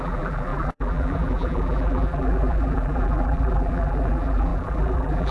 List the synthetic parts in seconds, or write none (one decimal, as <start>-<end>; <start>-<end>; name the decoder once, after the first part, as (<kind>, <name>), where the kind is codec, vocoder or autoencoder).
0.0-5.3 (vocoder, BigVGAN v2)